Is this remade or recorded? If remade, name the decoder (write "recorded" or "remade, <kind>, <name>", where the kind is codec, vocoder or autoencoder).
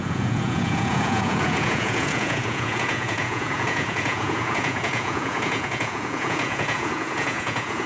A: remade, vocoder, Vocos